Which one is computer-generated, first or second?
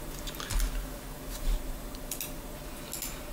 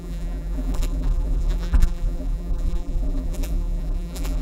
second